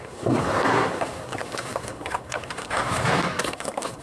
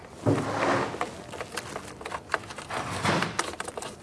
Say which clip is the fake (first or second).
first